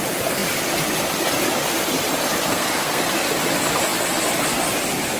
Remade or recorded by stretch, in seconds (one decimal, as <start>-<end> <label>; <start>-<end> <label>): 0.0-2.5 recorded; 2.5-3.1 remade; 3.1-5.2 recorded